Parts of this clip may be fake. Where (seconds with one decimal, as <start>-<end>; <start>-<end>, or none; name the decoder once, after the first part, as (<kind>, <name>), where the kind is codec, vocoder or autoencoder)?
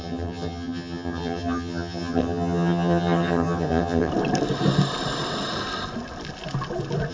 0.0-4.1 (vocoder, HiFi-GAN)